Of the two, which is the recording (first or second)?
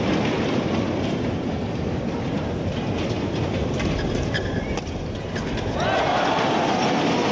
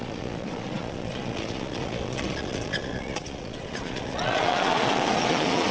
first